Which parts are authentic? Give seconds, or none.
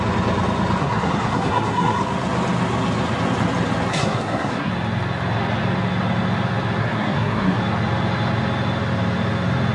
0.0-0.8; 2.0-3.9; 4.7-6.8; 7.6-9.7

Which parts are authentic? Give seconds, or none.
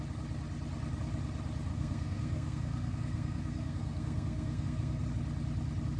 0.0-1.7; 5.0-6.0